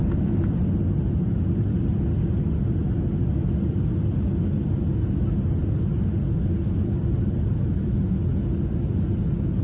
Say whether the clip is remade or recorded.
recorded